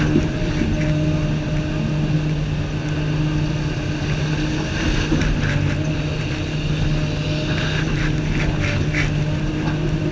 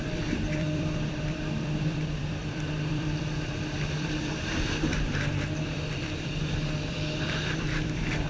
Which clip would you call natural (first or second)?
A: first